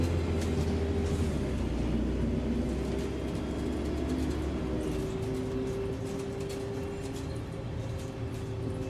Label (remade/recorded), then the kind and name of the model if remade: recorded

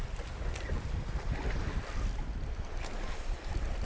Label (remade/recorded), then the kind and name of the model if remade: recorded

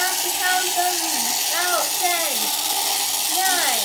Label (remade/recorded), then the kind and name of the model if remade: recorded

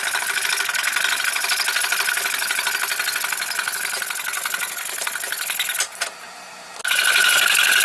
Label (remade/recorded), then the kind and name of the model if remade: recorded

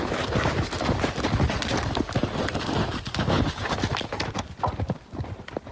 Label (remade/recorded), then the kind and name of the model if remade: recorded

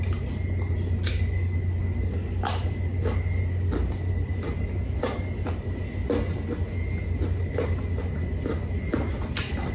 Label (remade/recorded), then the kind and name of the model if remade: recorded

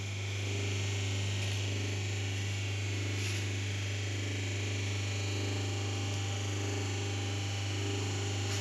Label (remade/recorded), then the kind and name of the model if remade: recorded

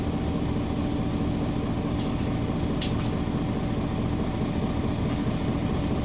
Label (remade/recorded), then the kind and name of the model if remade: recorded